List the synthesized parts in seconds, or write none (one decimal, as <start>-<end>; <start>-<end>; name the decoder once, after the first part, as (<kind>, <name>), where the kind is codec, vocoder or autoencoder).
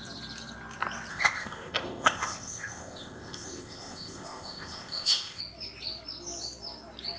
1.1-5.4 (codec, ZipCodec)